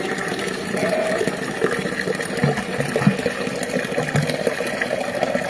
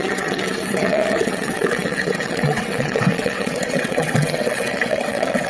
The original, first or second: first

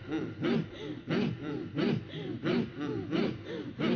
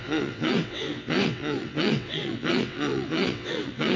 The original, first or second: first